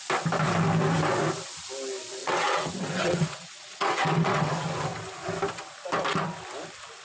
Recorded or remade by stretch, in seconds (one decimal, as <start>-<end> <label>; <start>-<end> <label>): 0.0-2.2 recorded; 2.2-4.5 remade; 4.5-7.0 recorded